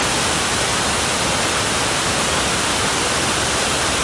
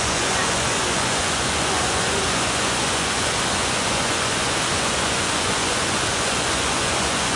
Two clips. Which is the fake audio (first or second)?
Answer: second